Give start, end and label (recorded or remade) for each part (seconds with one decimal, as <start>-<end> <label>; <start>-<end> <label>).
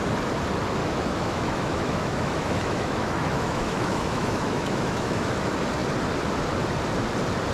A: 0.0-0.8 recorded; 0.8-5.3 remade; 5.3-7.5 recorded